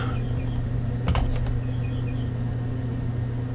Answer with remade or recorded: recorded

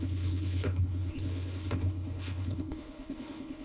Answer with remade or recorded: remade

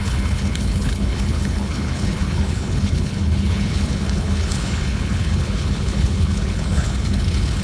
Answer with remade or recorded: remade